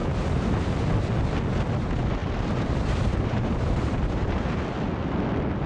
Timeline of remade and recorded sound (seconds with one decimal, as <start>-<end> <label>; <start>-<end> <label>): 0.0-0.8 remade; 0.8-2.2 recorded; 2.2-4.6 remade; 4.6-5.7 recorded